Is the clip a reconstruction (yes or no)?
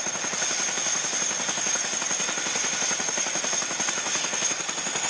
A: no